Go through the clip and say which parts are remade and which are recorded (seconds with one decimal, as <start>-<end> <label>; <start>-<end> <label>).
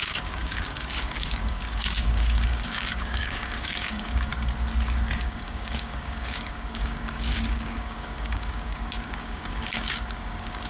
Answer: 0.0-4.3 remade; 4.3-5.1 recorded; 5.1-10.7 remade